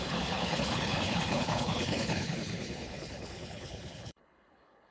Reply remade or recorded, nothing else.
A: remade